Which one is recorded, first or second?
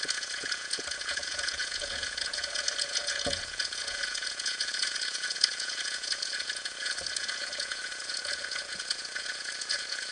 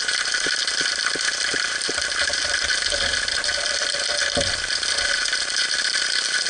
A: second